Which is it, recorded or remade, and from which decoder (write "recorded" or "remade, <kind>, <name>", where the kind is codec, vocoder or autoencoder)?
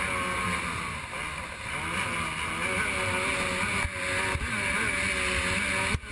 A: recorded